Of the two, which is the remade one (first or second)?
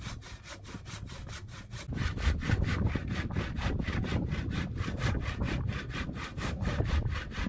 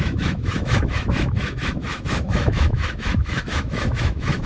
second